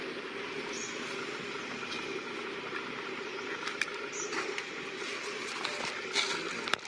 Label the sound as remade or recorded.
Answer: recorded